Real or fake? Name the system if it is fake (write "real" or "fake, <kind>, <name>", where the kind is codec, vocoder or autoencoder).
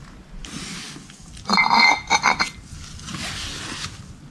real